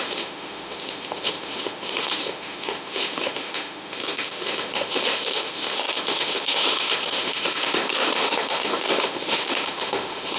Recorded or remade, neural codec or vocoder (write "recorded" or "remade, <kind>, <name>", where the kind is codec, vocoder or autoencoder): remade, autoencoder, DAC-VAE